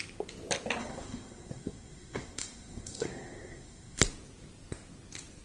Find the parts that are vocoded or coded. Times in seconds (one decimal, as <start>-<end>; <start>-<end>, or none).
0.8-4.0